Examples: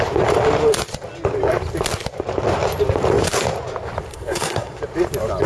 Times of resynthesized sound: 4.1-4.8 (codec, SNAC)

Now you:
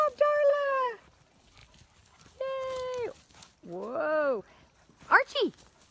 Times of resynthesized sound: 0.5-1.0 (codec, SNAC)